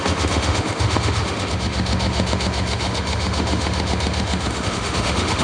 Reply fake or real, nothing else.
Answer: fake